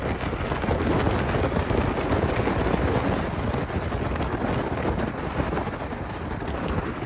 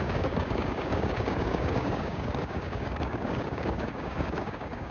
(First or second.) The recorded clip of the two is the first